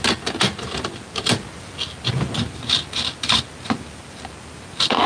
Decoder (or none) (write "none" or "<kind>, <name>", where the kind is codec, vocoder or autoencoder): none